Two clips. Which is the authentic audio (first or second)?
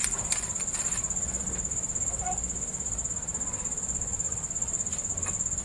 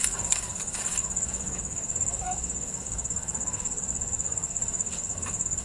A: first